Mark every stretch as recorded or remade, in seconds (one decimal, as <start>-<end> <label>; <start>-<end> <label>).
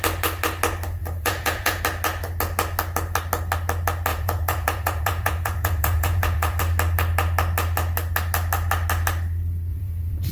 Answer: 0.0-1.0 recorded; 1.0-1.8 remade; 1.8-4.1 recorded; 4.1-6.6 remade; 6.6-9.7 recorded; 9.7-10.3 remade